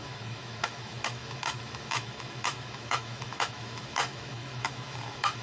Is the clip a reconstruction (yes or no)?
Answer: yes